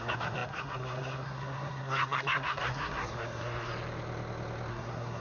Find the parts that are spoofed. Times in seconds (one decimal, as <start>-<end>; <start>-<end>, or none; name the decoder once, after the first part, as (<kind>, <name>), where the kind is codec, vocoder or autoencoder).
0.0-3.7 (codec, SNAC); 4.7-5.2

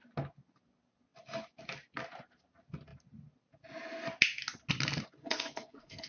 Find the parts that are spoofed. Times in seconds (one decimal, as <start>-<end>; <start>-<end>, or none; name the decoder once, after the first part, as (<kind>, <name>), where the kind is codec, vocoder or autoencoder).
5.2-6.1 (codec, SNAC)

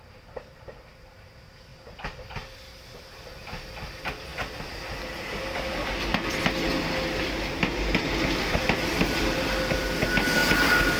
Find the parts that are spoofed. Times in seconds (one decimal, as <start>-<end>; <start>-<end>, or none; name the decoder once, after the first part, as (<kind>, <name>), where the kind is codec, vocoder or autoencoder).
none

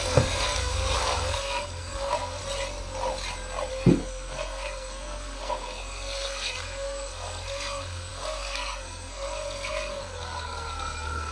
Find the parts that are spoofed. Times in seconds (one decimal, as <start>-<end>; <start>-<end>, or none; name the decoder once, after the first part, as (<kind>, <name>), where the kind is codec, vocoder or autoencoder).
0.0-2.4 (codec, SNAC); 3.7-11.3

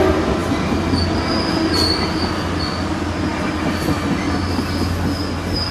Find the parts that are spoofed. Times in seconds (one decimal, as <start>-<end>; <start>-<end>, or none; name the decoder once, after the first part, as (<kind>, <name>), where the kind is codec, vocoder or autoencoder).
none

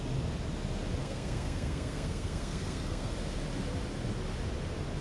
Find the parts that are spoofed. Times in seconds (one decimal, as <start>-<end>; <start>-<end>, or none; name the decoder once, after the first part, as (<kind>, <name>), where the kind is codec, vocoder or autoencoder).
1.0-3.1 (codec, SNAC)

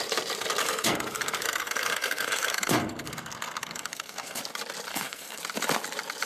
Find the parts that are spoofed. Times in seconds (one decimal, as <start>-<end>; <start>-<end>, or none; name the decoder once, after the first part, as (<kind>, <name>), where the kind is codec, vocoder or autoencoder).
0.6-4.4 (codec, SNAC); 4.9-5.4

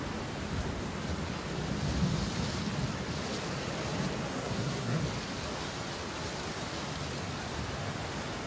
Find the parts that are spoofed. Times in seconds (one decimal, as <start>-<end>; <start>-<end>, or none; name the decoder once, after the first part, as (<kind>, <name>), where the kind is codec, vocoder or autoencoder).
4.3-5.0 (codec, SNAC)